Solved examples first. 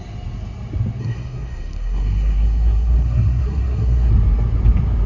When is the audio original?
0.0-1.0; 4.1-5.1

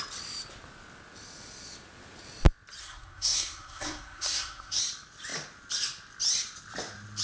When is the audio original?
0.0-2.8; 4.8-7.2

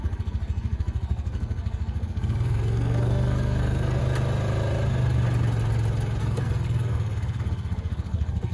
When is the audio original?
4.0-6.2

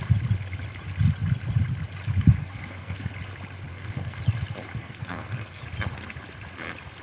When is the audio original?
0.0-2.4; 3.1-3.7; 4.2-4.7; 5.6-7.0

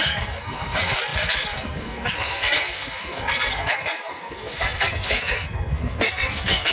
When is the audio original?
none

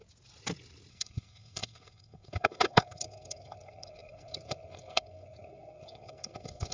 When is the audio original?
0.0-0.9

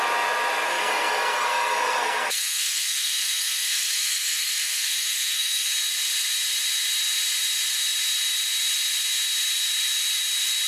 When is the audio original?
0.0-0.7; 5.7-10.7